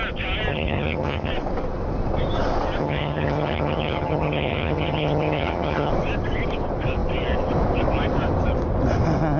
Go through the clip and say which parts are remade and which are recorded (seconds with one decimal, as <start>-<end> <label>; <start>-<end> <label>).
0.0-0.5 recorded; 0.5-1.3 remade; 1.3-2.8 recorded; 2.8-5.9 remade; 5.9-9.4 recorded